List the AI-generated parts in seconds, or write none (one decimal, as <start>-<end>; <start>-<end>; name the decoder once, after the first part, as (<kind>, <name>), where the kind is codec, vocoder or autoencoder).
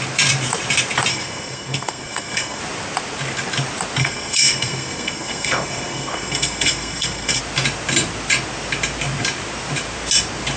1.1-2.6 (codec, SNAC); 4.0-7.4